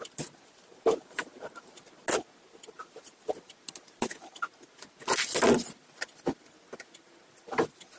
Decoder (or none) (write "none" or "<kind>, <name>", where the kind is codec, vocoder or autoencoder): none